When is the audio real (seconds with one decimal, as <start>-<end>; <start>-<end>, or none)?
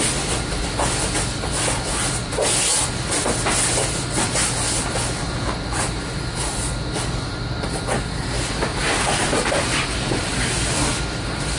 0.0-11.6